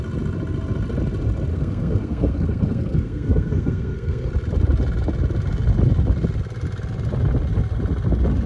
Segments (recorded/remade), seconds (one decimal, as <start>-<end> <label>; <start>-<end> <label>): 0.0-1.5 recorded; 1.5-4.3 remade; 4.3-8.5 recorded